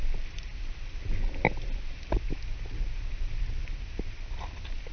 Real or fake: real